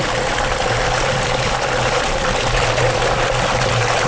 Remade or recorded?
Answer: recorded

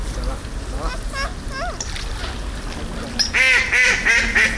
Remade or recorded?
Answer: recorded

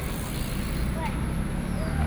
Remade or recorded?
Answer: recorded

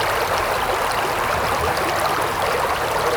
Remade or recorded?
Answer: recorded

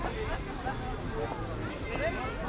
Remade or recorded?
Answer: recorded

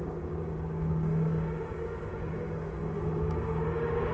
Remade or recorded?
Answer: remade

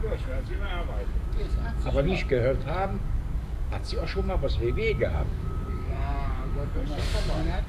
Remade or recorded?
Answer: remade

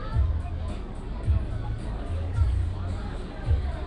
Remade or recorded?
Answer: remade